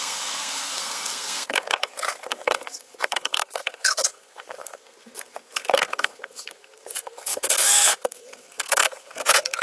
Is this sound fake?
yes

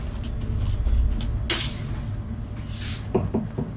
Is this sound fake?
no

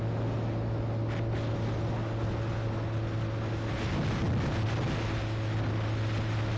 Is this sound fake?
no